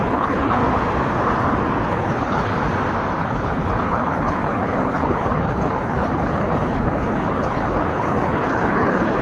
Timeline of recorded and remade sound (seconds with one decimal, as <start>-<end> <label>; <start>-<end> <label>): 0.0-0.6 remade; 0.6-1.9 recorded; 1.9-2.5 remade; 2.5-3.2 recorded; 3.2-9.2 remade